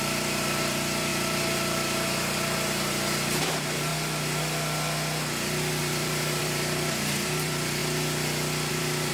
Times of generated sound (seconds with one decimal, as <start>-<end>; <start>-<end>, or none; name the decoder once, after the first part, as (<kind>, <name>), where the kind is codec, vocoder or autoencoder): 0.0-3.9 (vocoder, BigVGAN v2); 5.8-7.8; 8.7-9.1